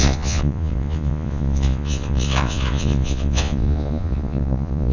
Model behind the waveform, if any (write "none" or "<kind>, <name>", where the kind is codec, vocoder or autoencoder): vocoder, Vocos